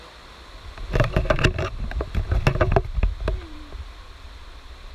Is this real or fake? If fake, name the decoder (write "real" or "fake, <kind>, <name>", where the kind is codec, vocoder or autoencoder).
real